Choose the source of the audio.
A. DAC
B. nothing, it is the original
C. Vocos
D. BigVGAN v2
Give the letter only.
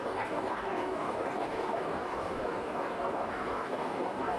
A